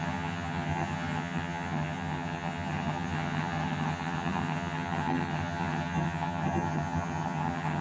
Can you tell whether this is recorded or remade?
remade